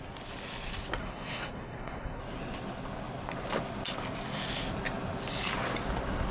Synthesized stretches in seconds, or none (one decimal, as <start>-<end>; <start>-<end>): 1.0-2.2